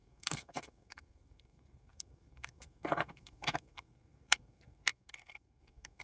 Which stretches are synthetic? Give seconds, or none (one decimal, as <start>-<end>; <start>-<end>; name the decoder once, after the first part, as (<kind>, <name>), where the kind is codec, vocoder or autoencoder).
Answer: 0.0-6.0 (codec, SNAC)